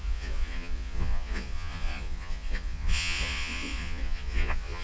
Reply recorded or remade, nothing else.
remade